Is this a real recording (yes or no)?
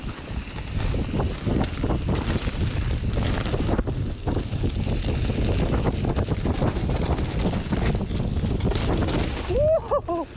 yes